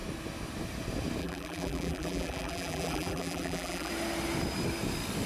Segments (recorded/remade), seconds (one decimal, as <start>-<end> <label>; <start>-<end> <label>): 0.0-1.2 recorded; 1.2-3.9 remade; 3.9-5.3 recorded

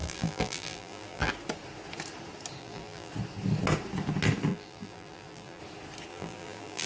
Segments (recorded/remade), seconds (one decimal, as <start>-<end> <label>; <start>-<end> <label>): 0.0-1.3 remade; 1.3-2.6 recorded; 2.6-3.1 remade; 3.1-4.5 recorded; 4.5-5.6 remade; 5.6-6.1 recorded; 6.1-6.9 remade

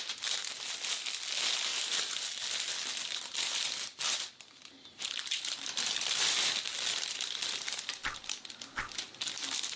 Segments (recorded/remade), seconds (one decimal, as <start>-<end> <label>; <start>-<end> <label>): 0.0-1.7 recorded; 1.7-6.3 remade; 6.3-8.0 recorded; 8.0-8.6 remade; 8.6-9.8 recorded

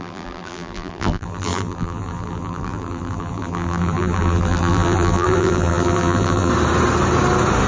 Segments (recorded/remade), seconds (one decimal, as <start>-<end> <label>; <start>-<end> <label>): 0.0-6.5 remade; 6.5-7.7 recorded

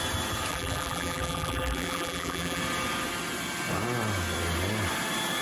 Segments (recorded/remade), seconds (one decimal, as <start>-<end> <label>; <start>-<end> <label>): 0.0-0.5 recorded; 0.5-2.6 remade; 2.6-5.4 recorded